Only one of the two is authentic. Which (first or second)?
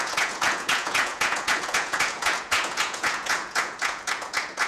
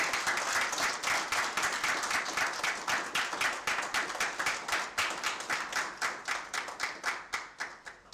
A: second